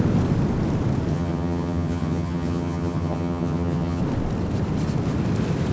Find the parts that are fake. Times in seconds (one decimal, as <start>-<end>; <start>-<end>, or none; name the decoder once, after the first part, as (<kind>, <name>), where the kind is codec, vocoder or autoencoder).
1.1-4.0 (vocoder, HiFi-GAN)